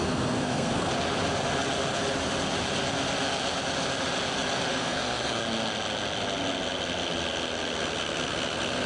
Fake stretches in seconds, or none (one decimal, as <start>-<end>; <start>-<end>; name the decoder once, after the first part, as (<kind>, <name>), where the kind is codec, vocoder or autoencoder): 0.0-0.9 (codec, SNAC); 4.7-5.4